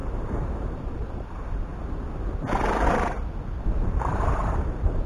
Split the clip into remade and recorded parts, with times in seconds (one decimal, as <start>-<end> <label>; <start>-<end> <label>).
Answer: 0.0-1.7 remade; 1.7-4.0 recorded; 4.0-5.1 remade